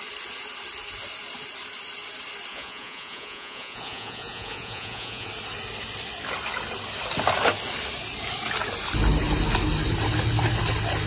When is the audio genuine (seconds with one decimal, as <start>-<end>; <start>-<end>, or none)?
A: 0.0-2.5; 5.3-11.1